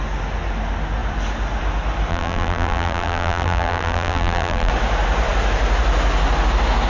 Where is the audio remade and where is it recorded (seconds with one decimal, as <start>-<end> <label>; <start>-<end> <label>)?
0.0-2.1 recorded; 2.1-4.7 remade; 4.7-6.9 recorded